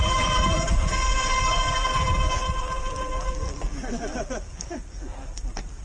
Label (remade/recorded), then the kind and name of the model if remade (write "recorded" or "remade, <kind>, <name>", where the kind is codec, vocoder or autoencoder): remade, vocoder, BigVGAN v2